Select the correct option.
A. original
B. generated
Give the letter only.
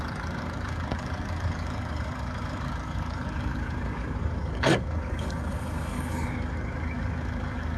B